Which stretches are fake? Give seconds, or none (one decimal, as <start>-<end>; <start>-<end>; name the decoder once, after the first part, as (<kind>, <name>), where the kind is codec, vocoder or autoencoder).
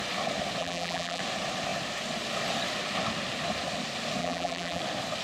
0.6-1.2 (vocoder, BigVGAN v2); 4.2-4.8